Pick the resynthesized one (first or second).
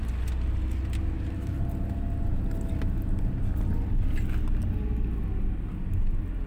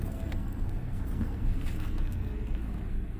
second